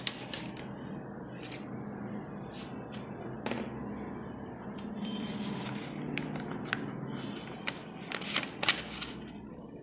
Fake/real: real